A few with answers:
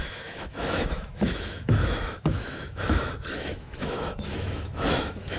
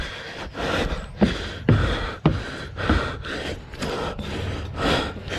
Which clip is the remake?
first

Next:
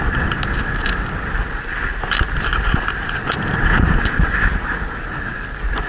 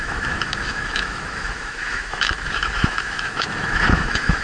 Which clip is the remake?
second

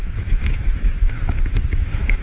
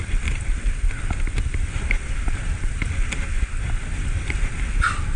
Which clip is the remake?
first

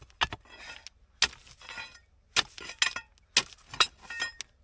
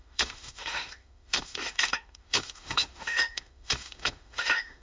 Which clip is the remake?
second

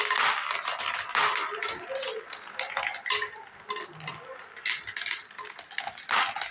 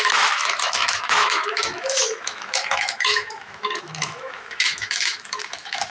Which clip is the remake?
second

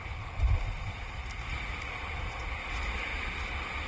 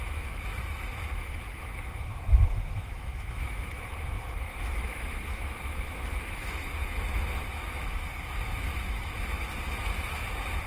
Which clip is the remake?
second